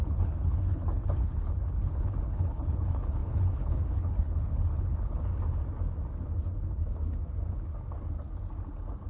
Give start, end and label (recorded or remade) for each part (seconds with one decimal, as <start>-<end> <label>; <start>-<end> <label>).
0.0-5.3 remade; 5.3-9.1 recorded